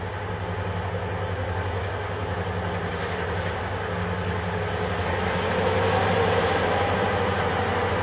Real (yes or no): yes